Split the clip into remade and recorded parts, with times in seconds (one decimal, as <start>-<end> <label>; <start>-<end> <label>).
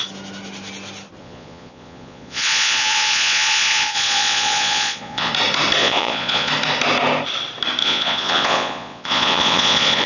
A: 0.0-1.2 recorded; 1.2-5.3 remade; 5.3-5.8 recorded; 5.8-6.5 remade; 6.5-7.8 recorded; 7.8-10.1 remade